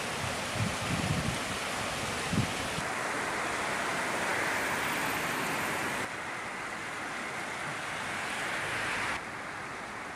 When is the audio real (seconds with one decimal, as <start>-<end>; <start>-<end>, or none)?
0.0-10.2